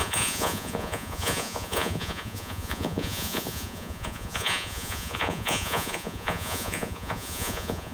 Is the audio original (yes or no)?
no